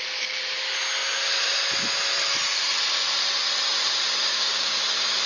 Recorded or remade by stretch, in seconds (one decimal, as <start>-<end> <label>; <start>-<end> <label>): 0.0-4.2 recorded; 4.2-4.8 remade; 4.8-5.3 recorded